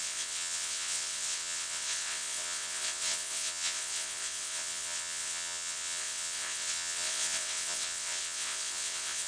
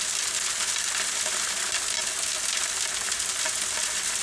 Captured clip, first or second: second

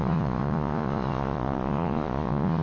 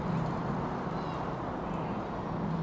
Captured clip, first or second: second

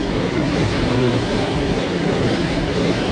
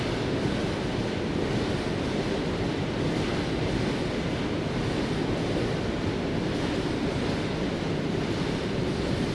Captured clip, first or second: second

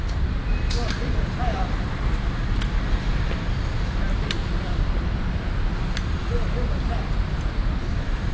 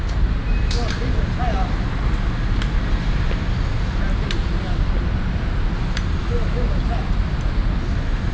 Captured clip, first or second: second